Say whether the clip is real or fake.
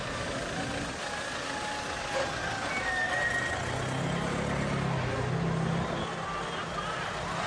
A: real